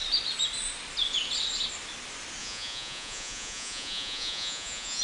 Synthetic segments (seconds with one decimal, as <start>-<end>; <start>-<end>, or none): 2.4-5.0